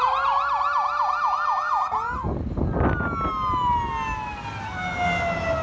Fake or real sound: real